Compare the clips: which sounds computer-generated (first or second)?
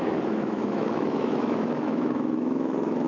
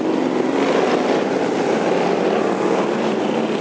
first